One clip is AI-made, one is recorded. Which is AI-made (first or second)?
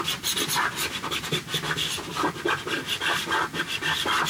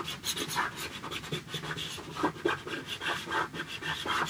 first